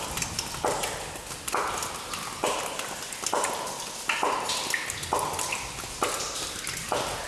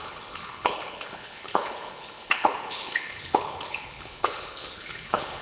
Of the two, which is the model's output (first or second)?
second